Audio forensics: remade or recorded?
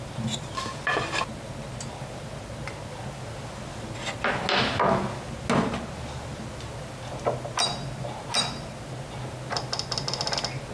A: recorded